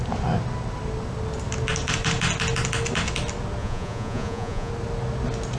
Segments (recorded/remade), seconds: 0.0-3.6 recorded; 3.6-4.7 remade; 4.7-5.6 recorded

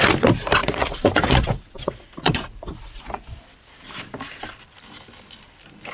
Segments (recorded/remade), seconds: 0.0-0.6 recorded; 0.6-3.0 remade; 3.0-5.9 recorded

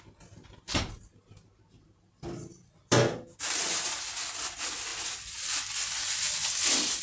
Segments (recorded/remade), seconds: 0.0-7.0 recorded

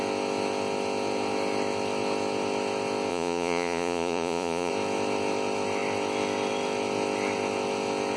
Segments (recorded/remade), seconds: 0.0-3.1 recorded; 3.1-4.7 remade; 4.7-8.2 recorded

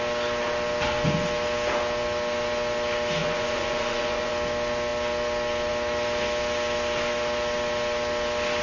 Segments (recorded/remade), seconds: 0.0-3.2 recorded; 3.2-4.3 remade; 4.3-8.6 recorded

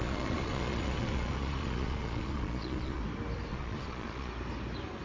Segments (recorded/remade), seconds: 0.0-3.0 remade; 3.0-3.5 recorded; 3.5-4.3 remade; 4.3-5.0 recorded

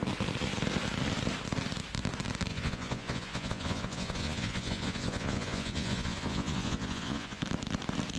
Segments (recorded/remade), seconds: 0.0-2.5 recorded; 2.5-7.4 remade; 7.4-8.2 recorded

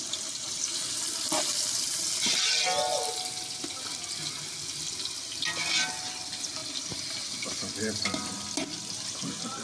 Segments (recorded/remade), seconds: 0.0-9.6 recorded